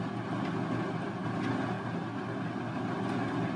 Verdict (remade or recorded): recorded